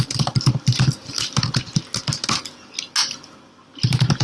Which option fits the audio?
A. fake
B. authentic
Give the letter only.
B